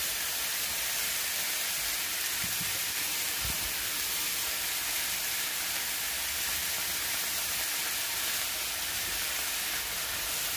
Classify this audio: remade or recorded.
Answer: recorded